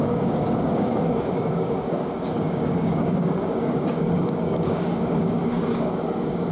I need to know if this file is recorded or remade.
remade